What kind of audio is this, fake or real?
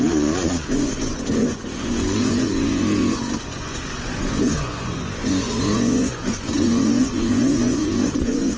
fake